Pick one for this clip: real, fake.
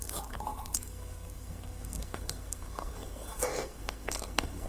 fake